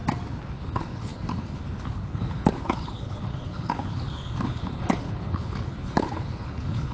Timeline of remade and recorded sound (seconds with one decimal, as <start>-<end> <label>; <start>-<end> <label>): 0.0-0.5 recorded; 0.5-6.9 remade